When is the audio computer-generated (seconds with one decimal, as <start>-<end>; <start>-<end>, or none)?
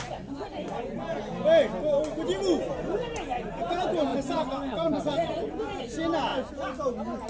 4.1-5.8